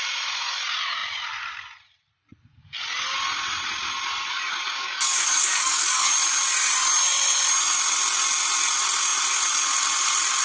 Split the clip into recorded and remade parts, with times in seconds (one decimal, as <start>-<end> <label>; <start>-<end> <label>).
0.0-4.3 recorded; 4.3-6.1 remade; 6.1-10.4 recorded